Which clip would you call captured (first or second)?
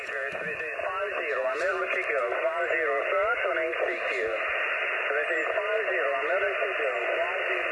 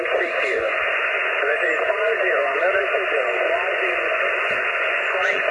first